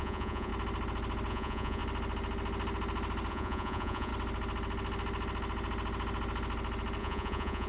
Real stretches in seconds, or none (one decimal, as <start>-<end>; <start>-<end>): 0.5-1.3; 1.8-3.3; 4.1-7.0